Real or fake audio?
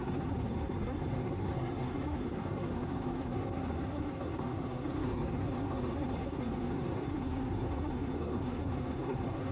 fake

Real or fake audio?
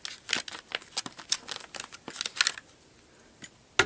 real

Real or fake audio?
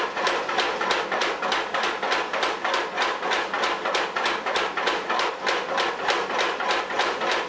real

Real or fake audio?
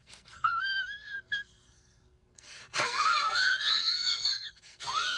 fake